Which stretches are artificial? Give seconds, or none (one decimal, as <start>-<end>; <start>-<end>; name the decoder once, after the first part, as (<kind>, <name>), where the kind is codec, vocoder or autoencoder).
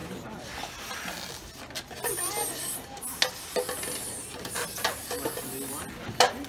none